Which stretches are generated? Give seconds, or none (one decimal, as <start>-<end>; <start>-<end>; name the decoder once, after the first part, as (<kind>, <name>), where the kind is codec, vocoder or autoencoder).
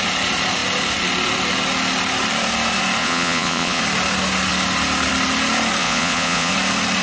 3.0-3.8 (vocoder, Vocos); 5.8-6.5